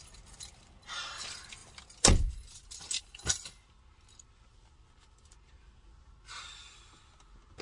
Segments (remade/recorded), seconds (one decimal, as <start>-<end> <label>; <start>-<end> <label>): 0.0-7.6 recorded